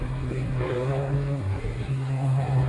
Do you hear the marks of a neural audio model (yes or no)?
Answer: yes